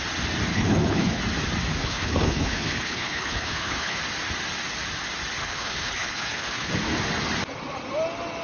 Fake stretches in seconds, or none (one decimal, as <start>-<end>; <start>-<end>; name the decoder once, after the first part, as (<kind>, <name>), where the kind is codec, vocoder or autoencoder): 0.5-1.2 (codec, HILCodec); 1.8-4.0; 5.4-6.7